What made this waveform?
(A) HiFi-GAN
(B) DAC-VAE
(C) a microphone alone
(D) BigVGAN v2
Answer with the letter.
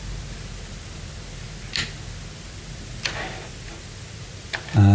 C